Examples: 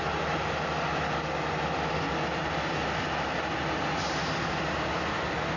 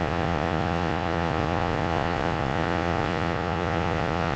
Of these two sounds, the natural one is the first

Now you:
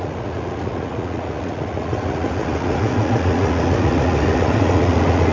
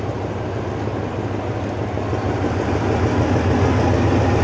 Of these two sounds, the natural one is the second